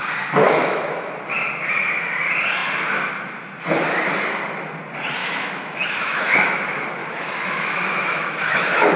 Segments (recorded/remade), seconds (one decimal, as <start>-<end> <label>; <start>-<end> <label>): 0.0-0.4 recorded; 0.4-1.1 remade; 1.1-5.2 recorded; 5.2-6.5 remade; 6.5-7.0 recorded; 7.0-9.0 remade